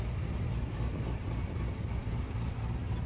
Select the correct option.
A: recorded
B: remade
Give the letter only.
A